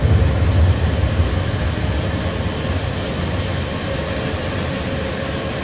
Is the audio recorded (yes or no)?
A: yes